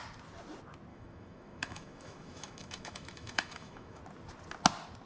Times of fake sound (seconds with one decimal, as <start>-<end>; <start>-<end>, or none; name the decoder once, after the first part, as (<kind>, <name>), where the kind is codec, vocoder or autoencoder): 0.9-4.0 (autoencoder, DAC-VAE)